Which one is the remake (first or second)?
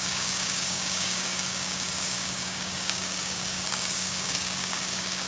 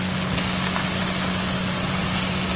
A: first